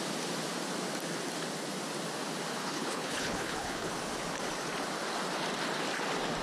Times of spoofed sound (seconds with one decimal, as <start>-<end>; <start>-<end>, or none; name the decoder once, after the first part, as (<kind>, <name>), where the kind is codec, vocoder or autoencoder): 2.6-3.9 (codec, HILCodec)